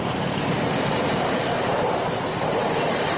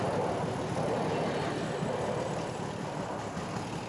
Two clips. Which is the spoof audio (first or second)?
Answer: first